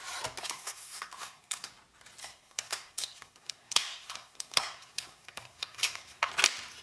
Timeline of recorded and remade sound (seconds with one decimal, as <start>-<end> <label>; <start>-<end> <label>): 0.0-0.4 recorded; 0.4-1.7 remade; 1.7-2.2 recorded; 2.2-6.3 remade; 6.3-6.8 recorded